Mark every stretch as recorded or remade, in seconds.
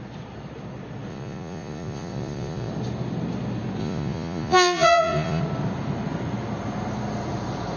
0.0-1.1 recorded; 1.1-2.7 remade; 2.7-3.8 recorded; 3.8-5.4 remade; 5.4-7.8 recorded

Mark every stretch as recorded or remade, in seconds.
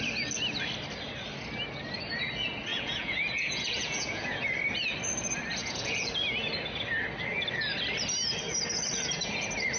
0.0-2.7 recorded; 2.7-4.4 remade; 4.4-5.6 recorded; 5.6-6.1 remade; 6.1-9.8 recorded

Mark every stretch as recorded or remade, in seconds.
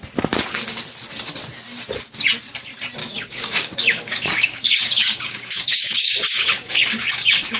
0.0-3.0 recorded; 3.0-7.6 remade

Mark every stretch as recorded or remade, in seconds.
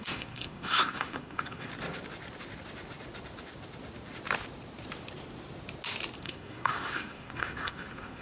0.0-1.7 remade; 1.7-6.2 recorded; 6.2-8.2 remade